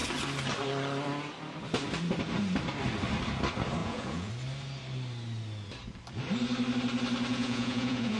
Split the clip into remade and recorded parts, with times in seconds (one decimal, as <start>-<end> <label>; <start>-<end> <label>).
0.0-3.8 recorded; 3.8-4.3 remade; 4.3-7.3 recorded; 7.3-8.2 remade